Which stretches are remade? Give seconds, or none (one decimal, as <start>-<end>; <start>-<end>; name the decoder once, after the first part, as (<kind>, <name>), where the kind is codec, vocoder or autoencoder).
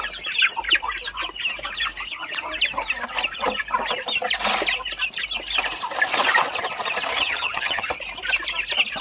7.1-7.9 (vocoder, HiFi-GAN)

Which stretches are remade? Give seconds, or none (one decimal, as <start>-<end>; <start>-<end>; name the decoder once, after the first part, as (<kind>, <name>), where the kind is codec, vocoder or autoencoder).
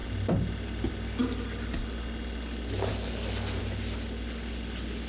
none